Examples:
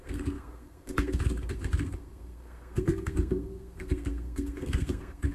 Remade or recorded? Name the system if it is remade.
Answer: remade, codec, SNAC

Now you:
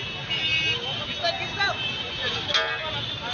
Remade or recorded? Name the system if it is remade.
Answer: recorded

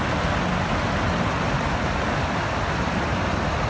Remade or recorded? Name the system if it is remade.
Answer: recorded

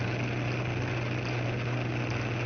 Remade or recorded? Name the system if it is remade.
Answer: recorded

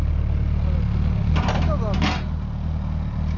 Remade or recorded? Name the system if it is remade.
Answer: recorded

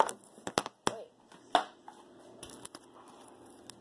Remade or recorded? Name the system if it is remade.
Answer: recorded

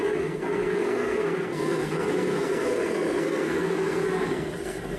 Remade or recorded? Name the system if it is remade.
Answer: remade, codec, SNAC